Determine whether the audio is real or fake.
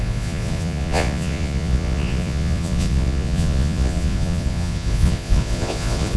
fake